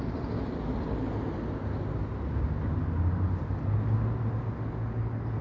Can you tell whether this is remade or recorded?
recorded